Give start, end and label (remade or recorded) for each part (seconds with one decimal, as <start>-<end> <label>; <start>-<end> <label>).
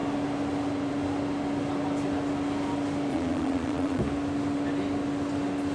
0.0-3.1 recorded; 3.1-4.0 remade; 4.0-5.7 recorded